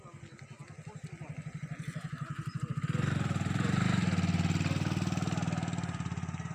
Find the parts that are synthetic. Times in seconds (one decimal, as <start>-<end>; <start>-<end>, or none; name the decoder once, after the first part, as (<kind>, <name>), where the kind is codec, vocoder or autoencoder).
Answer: none